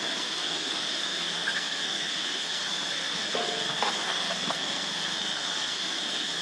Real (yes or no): no